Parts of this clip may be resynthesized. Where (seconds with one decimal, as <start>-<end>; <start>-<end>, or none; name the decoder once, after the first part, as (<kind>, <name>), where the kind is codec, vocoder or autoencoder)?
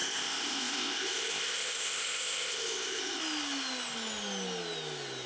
0.0-3.2 (codec, ZipCodec)